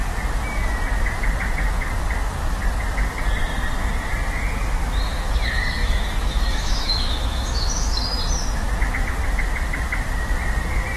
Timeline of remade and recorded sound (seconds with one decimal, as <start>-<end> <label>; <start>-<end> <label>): 0.0-5.8 recorded; 5.8-8.0 remade; 8.0-11.0 recorded